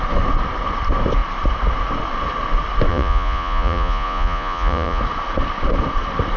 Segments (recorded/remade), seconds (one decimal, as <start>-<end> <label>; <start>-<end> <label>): 0.0-2.9 recorded; 2.9-5.0 remade; 5.0-6.4 recorded